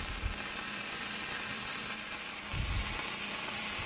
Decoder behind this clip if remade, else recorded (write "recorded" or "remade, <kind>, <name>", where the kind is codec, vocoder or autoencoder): remade, vocoder, BigVGAN v2